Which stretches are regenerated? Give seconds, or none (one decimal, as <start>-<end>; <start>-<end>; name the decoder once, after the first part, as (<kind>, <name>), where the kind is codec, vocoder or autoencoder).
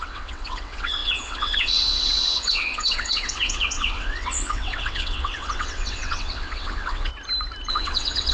0.0-7.1 (vocoder, WaveNeXt); 7.7-8.3